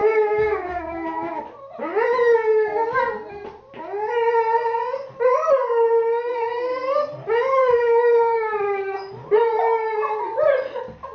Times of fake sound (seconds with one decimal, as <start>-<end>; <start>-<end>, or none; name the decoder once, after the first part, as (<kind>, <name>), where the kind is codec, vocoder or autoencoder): 0.0-1.4 (autoencoder, DAC-VAE); 7.6-8.6